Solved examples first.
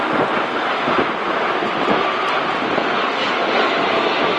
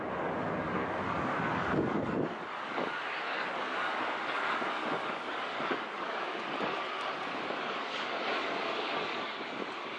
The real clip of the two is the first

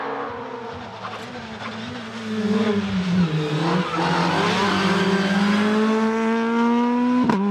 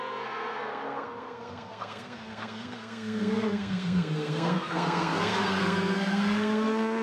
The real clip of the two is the first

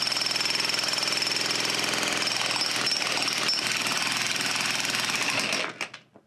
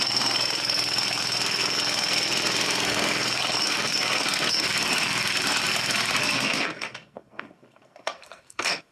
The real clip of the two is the first